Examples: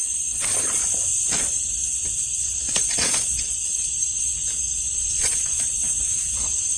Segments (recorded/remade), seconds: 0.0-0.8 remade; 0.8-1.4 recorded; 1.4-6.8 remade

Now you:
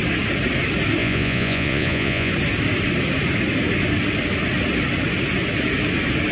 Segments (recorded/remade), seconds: 0.0-1.0 recorded; 1.0-2.3 remade; 2.3-6.3 recorded